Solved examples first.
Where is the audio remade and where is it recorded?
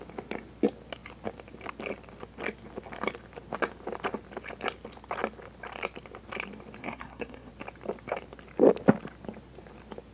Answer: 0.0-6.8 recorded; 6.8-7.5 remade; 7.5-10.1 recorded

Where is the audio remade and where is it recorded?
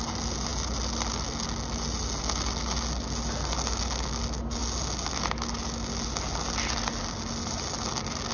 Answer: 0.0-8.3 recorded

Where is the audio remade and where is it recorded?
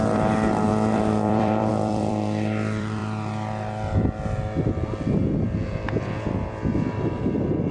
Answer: 0.0-3.0 remade; 3.0-7.7 recorded